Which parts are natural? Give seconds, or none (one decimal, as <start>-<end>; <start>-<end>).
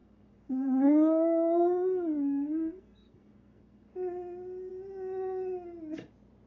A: 3.9-6.5